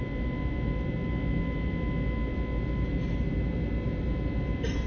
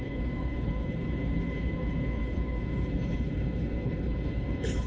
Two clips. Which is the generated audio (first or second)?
second